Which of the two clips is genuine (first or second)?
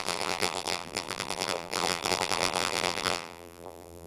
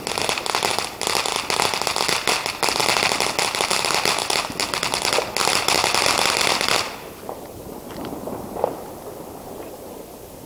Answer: second